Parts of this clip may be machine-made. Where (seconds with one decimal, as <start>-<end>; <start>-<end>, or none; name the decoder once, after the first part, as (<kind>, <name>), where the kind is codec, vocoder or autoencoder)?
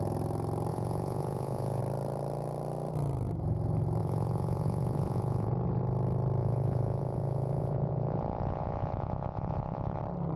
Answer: 0.7-1.8 (vocoder, Vocos); 4.0-5.5; 6.4-10.0